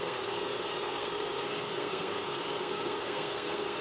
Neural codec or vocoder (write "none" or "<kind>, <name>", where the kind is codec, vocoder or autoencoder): codec, SNAC